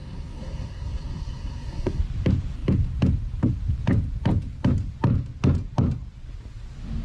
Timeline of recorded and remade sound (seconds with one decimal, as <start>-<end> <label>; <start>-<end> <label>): 0.0-2.0 remade; 2.0-7.0 recorded

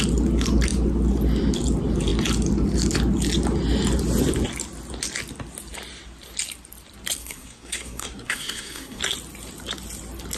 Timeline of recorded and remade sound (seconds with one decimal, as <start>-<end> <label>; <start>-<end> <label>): 0.0-7.2 recorded; 7.2-9.0 remade; 9.0-10.4 recorded

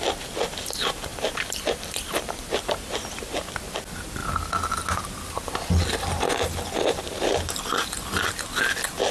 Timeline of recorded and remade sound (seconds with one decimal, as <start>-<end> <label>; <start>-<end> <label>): 0.0-1.1 recorded; 1.1-2.5 remade; 2.5-9.1 recorded

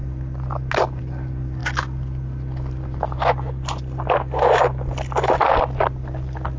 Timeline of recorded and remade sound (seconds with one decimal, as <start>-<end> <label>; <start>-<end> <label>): 0.0-6.6 recorded

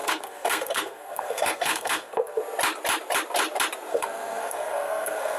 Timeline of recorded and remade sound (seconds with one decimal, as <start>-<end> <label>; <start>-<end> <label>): 0.0-2.4 remade; 2.4-3.9 recorded; 3.9-5.4 remade

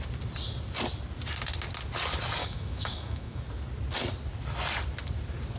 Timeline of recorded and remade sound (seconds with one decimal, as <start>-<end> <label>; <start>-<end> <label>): 0.0-2.4 recorded; 2.4-3.4 remade; 3.4-5.6 recorded